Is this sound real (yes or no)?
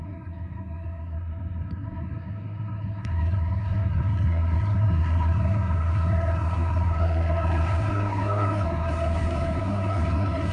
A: no